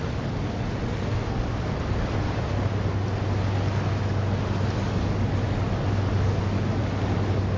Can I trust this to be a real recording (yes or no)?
yes